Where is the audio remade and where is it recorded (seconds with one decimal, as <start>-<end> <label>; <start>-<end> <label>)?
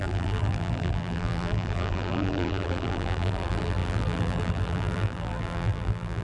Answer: 0.0-6.2 remade